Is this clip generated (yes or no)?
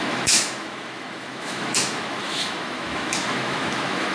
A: yes